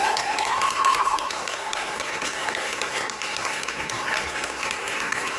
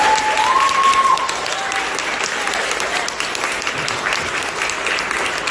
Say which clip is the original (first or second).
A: second